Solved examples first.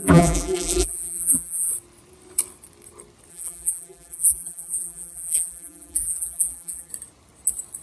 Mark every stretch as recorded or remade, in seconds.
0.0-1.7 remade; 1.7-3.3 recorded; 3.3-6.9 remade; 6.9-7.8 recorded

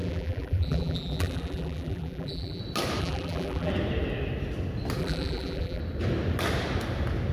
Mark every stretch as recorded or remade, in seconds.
0.0-2.6 remade; 2.6-3.0 recorded; 3.0-3.7 remade; 3.7-5.0 recorded; 5.0-5.8 remade; 5.8-7.3 recorded

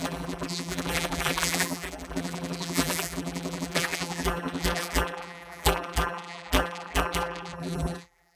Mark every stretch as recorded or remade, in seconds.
0.0-8.4 remade

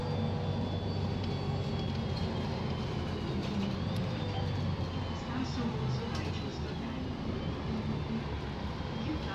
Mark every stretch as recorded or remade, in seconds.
0.0-3.4 recorded; 3.4-5.0 remade; 5.0-9.3 recorded

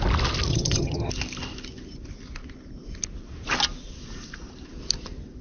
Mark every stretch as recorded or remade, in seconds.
0.0-0.5 recorded; 0.5-1.1 remade; 1.1-5.4 recorded